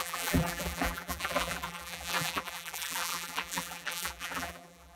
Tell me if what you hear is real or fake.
fake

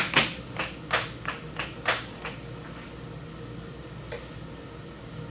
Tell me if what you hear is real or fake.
real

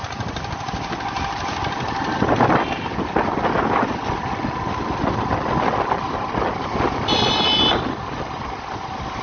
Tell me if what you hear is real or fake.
real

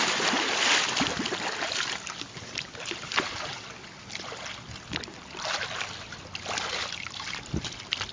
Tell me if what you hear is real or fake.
real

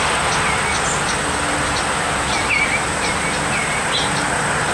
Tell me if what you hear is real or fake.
real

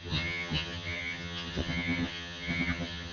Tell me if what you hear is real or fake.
fake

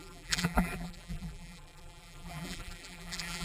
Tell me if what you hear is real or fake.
fake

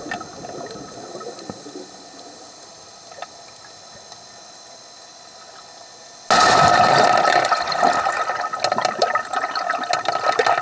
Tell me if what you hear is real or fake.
real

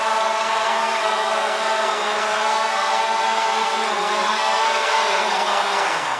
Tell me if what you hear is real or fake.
fake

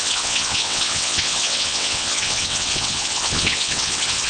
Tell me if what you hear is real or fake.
fake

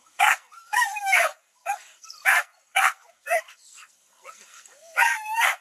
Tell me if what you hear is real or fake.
fake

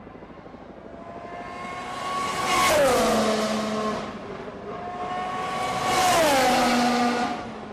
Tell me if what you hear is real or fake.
real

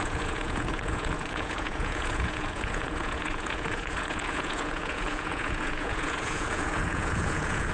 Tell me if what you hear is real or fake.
fake